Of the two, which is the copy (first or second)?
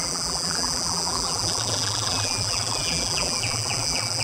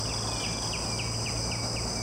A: first